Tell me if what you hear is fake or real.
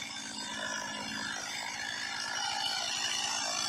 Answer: real